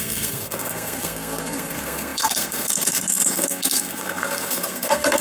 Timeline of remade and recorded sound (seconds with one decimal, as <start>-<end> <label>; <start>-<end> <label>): 0.0-5.2 remade